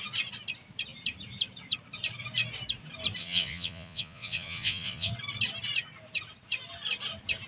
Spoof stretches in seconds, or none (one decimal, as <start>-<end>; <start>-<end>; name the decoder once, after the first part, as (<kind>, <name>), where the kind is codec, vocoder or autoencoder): 3.2-5.1 (vocoder, Vocos)

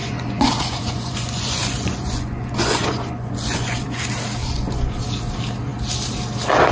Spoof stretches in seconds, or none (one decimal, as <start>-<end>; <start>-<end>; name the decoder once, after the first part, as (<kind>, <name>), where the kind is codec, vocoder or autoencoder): 0.0-4.0 (vocoder, Vocos); 4.4-5.0